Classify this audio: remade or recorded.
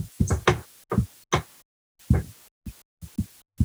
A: recorded